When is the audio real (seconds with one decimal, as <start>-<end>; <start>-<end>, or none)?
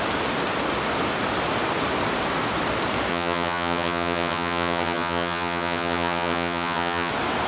0.0-3.1; 7.1-7.5